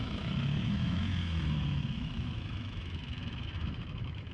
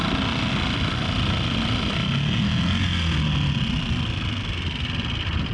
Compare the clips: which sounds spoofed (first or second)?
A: first